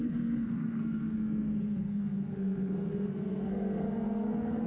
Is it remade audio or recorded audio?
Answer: remade